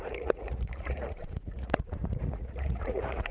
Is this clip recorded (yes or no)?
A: no